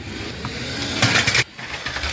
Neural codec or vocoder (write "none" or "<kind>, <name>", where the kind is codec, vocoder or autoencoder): none